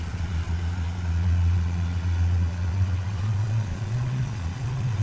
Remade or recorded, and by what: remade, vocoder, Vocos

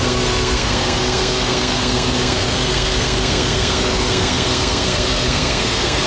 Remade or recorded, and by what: remade, codec, SNAC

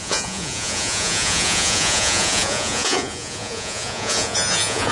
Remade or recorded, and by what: remade, vocoder, Vocos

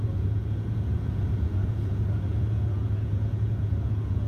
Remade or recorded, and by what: remade, vocoder, Vocos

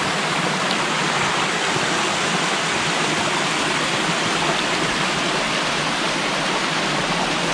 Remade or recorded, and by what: remade, vocoder, BigVGAN v2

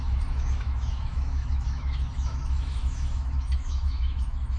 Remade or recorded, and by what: remade, autoencoder, DAC-VAE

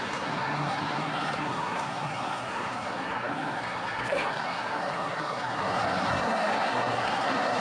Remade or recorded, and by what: remade, codec, SNAC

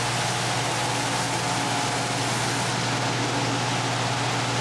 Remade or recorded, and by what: recorded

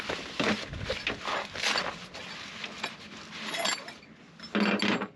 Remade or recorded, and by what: recorded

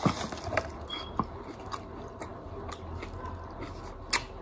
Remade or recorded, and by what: recorded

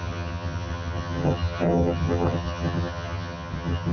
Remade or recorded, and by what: remade, vocoder, HiFi-GAN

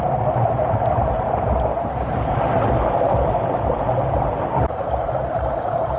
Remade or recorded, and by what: recorded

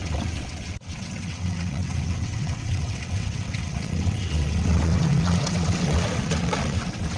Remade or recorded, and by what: remade, vocoder, WaveNeXt